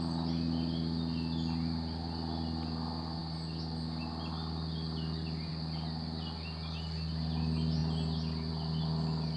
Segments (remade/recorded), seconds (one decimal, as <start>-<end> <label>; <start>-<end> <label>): 0.0-9.4 recorded